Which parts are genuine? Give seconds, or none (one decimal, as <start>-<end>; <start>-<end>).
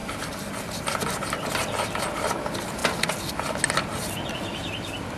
2.8-3.8; 4.5-5.2